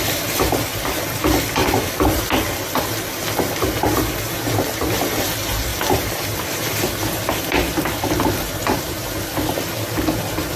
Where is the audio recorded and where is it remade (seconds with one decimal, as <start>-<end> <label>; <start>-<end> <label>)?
0.0-1.6 recorded; 1.6-2.2 remade; 2.2-5.7 recorded; 5.7-10.6 remade